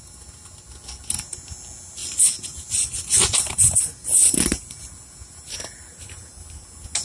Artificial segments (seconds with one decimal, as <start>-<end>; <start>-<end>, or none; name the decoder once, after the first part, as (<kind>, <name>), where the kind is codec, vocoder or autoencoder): none